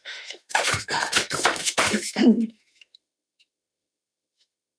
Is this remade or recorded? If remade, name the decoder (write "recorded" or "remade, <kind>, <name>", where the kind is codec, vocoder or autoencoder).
remade, autoencoder, DAC-VAE